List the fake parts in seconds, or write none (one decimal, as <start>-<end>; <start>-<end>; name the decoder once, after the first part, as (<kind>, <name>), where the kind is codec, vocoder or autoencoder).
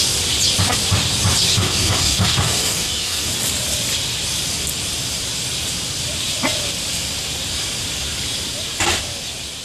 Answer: 1.5-3.3 (codec, DAC)